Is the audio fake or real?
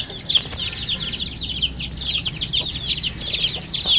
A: real